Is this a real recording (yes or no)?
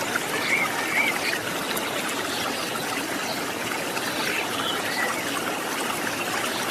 yes